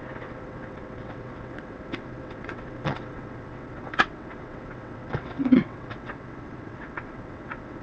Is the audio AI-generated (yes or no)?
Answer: yes